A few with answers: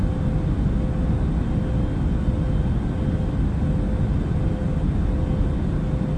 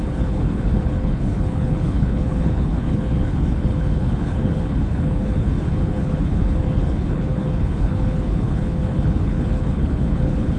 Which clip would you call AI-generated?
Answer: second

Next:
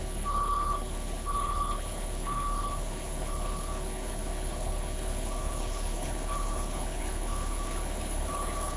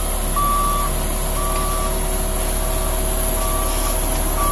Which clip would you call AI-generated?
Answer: first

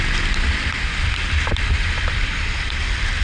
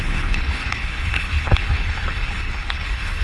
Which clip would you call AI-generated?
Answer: second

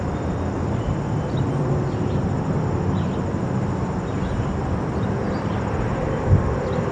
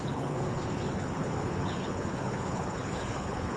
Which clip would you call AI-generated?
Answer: second